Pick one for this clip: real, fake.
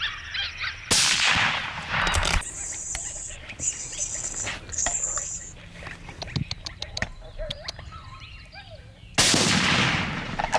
real